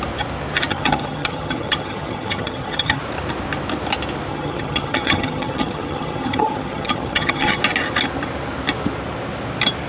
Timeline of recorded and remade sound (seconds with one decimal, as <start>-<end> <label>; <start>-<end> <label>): 0.0-0.7 recorded; 0.7-3.0 remade; 3.0-4.3 recorded; 4.3-7.6 remade; 7.6-9.9 recorded